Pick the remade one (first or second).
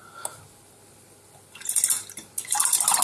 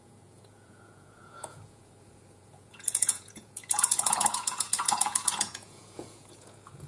second